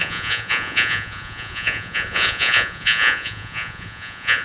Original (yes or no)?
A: no